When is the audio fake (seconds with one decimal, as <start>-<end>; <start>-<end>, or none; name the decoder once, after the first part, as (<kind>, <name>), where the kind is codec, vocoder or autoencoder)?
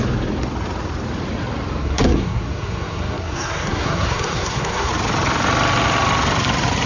1.8-4.9 (codec, SNAC)